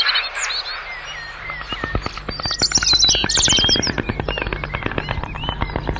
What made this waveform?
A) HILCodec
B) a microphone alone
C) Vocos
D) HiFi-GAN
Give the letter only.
B